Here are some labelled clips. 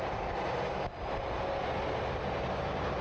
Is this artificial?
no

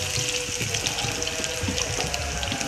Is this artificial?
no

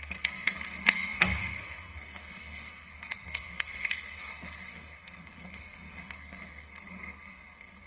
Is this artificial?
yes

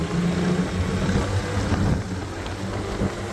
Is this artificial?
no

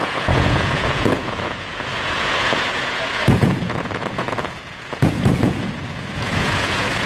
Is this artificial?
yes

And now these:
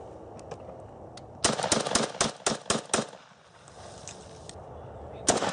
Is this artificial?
no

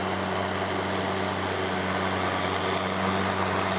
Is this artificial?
no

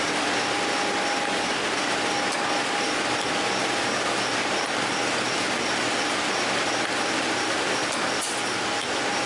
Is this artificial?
no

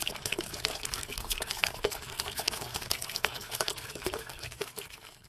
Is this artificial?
yes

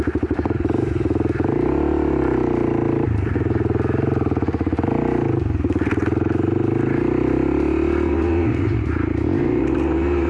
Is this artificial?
no